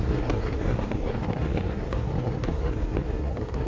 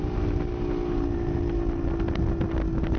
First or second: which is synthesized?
first